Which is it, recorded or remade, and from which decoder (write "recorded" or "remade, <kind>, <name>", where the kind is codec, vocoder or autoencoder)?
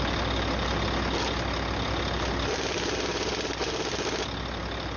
recorded